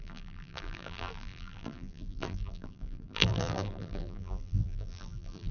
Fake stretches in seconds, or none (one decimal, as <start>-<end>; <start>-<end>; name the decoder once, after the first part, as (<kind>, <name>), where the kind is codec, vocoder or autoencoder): 0.0-5.5 (vocoder, BigVGAN v2)